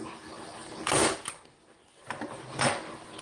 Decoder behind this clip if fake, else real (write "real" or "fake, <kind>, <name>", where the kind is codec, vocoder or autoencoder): real